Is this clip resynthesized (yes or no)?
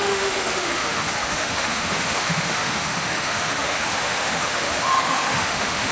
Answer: yes